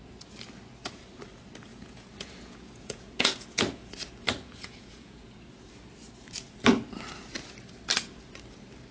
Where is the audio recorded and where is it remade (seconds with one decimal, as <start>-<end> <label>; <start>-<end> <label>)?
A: 0.0-1.7 recorded; 1.7-3.9 remade; 3.9-4.4 recorded; 4.4-5.3 remade; 5.3-8.9 recorded